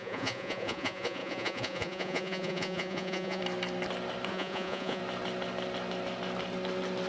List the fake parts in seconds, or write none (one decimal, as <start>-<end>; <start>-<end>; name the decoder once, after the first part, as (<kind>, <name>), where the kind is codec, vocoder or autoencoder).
0.0-3.4 (vocoder, Vocos); 4.3-5.0